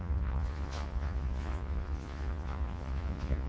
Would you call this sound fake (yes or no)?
yes